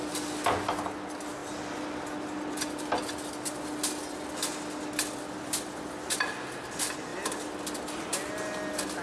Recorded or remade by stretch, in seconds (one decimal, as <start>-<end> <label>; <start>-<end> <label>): 0.0-9.0 recorded